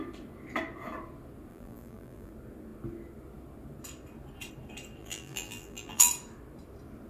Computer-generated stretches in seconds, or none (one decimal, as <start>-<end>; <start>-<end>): 1.5-2.3; 5.0-6.1